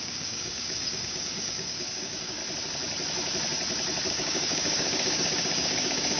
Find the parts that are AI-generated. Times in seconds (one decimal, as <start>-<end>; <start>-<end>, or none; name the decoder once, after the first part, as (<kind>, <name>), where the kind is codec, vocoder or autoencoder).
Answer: 0.0-2.4 (codec, DAC); 4.1-6.2